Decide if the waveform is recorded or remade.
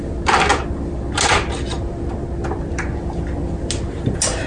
recorded